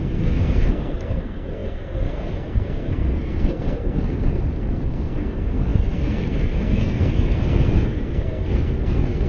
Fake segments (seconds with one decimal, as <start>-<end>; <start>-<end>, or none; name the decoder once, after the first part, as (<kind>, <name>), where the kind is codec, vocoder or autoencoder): 0.0-9.3 (codec, SNAC)